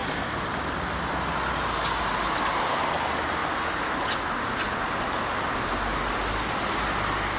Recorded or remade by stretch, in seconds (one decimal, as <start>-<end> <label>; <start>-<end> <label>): 0.0-7.4 recorded